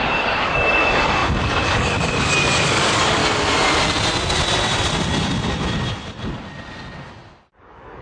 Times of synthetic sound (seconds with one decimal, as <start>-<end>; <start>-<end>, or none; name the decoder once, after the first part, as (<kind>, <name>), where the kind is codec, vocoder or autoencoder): 0.0-3.2 (codec, DAC); 7.6-8.0